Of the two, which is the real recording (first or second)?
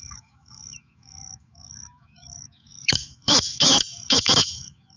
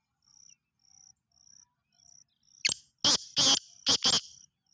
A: second